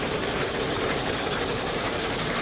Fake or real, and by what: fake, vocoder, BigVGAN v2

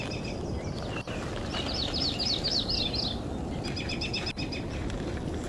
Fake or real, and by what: real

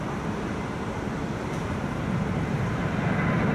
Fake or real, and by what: fake, vocoder, BigVGAN v2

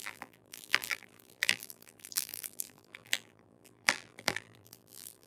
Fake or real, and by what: fake, vocoder, BigVGAN v2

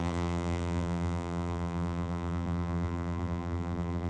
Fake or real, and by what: fake, vocoder, BigVGAN v2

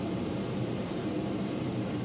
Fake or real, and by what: fake, vocoder, BigVGAN v2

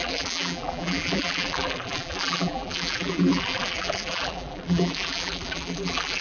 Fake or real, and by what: fake, vocoder, BigVGAN v2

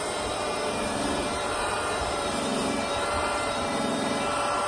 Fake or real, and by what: fake, vocoder, BigVGAN v2